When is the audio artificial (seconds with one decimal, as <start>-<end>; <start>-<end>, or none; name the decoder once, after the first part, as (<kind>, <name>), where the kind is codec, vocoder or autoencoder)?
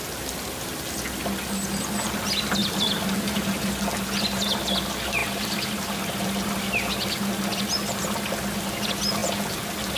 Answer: 5.2-6.0 (vocoder, BigVGAN v2)